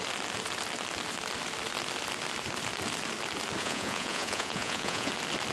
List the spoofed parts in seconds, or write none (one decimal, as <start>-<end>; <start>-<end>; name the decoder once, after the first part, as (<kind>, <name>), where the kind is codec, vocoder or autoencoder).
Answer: 3.6-5.1 (vocoder, Vocos)